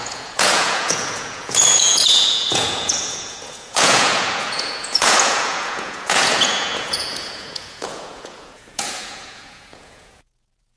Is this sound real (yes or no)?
no